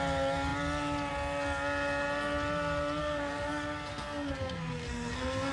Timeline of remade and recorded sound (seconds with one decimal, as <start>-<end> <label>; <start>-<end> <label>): 0.0-3.0 recorded; 3.0-3.5 remade; 3.5-3.9 recorded; 3.9-5.5 remade